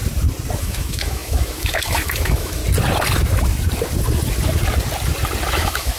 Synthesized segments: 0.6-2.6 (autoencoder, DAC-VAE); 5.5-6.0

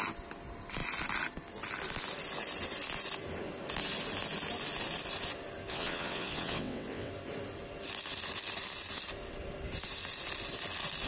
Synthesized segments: 5.7-7.1 (vocoder, WaveNeXt)

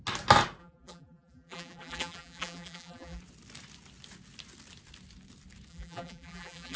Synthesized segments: 0.6-3.2 (vocoder, BigVGAN v2); 5.7-6.8

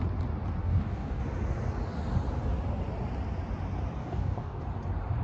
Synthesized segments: 0.6-1.2 (codec, DAC); 4.0-4.6

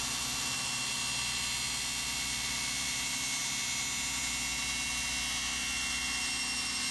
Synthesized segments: none

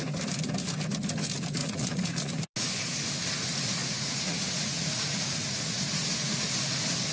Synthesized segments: 1.6-2.4 (vocoder, Vocos); 3.8-6.5